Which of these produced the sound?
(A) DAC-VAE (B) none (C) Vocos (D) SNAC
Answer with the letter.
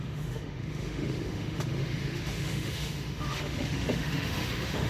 A